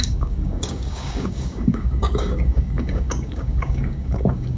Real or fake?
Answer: fake